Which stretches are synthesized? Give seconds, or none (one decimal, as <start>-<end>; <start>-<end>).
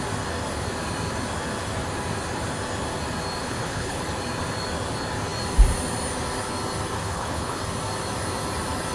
3.4-4.0; 7.0-7.6